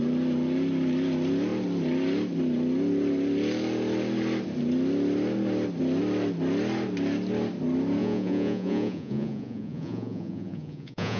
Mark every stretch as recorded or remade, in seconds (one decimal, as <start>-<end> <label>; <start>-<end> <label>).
0.0-8.0 recorded; 8.0-11.2 remade